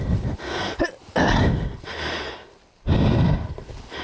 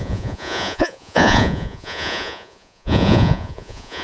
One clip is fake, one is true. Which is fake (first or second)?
second